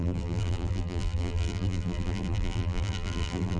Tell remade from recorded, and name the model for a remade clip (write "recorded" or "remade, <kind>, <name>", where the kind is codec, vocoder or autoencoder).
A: remade, vocoder, BigVGAN v2